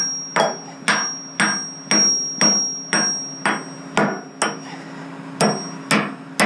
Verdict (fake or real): real